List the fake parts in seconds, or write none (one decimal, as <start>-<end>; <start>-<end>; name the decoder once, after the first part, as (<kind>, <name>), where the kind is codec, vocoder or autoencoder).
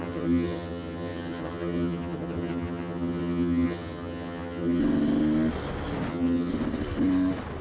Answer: 0.0-4.8 (vocoder, HiFi-GAN); 6.1-6.5